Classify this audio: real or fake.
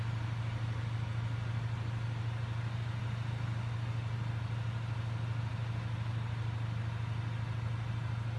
real